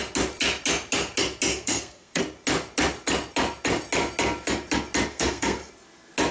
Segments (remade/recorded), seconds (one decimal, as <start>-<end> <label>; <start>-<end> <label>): 0.0-1.5 recorded; 1.5-2.2 remade; 2.2-5.1 recorded; 5.1-5.7 remade; 5.7-6.3 recorded